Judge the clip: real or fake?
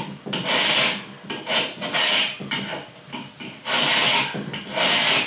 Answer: real